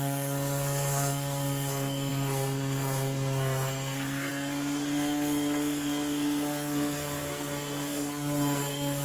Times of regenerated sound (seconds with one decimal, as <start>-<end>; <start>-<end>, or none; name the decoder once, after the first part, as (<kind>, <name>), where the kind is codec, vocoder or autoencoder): 0.0-9.0 (codec, SNAC)